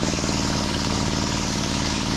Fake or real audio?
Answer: fake